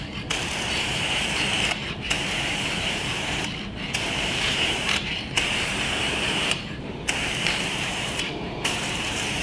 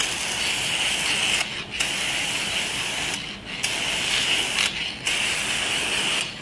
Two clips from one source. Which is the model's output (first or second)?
first